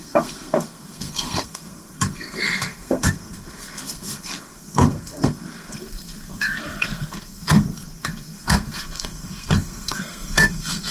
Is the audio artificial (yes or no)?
yes